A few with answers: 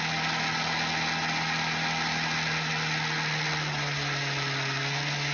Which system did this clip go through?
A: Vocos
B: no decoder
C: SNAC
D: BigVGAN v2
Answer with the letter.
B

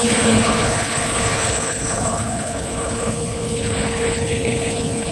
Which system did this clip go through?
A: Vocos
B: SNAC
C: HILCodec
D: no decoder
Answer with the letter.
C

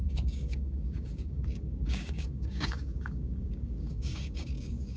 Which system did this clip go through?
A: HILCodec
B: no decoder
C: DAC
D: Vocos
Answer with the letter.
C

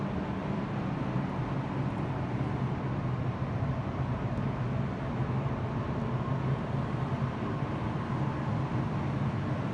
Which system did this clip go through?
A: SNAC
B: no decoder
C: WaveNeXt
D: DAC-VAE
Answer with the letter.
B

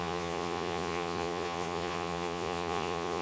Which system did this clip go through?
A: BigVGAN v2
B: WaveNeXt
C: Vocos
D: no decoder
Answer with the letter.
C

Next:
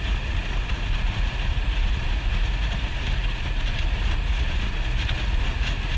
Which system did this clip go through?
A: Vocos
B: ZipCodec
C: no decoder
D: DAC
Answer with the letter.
A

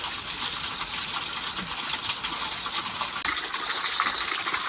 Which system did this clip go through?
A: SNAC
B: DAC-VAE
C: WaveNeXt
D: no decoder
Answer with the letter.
D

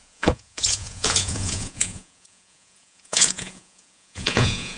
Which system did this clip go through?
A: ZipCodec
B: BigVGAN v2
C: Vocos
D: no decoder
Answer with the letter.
C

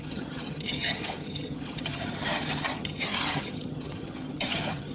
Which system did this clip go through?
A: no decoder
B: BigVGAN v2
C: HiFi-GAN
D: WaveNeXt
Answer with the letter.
C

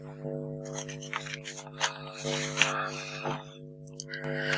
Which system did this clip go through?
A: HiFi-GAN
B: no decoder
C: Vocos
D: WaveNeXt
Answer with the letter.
B